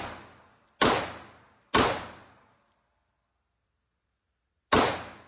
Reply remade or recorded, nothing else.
recorded